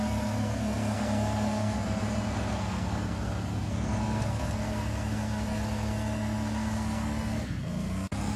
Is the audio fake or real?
fake